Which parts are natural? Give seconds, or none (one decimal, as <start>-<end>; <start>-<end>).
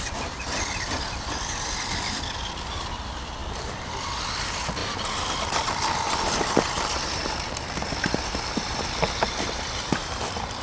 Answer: none